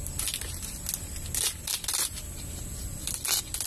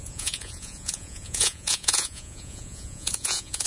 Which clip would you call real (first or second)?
first